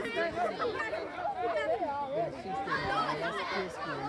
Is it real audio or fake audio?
real